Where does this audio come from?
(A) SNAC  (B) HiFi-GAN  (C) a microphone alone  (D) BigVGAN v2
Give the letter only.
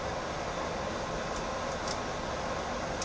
C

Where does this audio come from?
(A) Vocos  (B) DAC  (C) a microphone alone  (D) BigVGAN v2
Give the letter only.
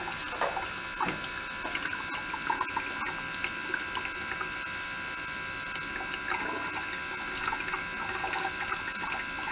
C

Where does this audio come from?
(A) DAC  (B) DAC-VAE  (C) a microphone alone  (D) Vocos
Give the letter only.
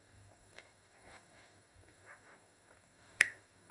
A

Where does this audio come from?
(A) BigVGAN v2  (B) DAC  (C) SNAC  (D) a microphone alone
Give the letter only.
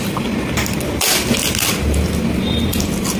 D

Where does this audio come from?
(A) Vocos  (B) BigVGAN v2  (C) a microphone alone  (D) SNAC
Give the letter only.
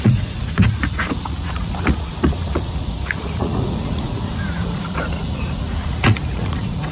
A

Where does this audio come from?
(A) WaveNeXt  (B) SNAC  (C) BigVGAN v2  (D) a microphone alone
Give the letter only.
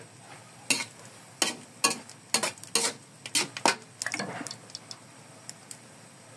D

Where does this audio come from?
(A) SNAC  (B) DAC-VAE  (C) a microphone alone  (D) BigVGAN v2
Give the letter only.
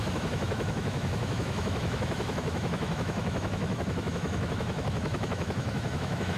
B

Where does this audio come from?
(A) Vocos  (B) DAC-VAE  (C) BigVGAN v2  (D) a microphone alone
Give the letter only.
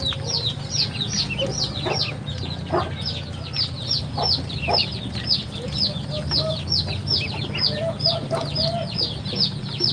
D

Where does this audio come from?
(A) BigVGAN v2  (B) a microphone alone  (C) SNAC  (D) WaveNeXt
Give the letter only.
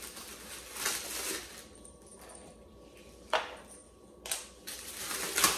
B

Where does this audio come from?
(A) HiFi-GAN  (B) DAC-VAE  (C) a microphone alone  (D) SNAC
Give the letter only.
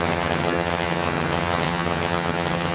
A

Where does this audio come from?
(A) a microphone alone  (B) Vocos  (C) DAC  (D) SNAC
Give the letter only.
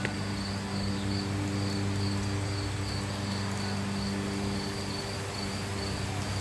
A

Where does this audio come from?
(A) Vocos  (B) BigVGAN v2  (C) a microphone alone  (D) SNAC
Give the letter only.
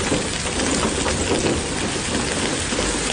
C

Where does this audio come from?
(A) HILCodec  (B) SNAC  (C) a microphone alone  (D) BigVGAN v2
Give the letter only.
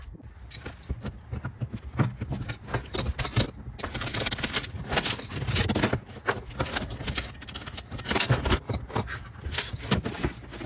C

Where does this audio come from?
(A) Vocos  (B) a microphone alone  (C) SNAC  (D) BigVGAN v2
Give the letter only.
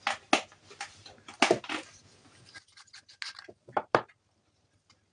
B